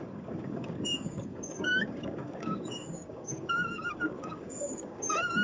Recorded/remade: remade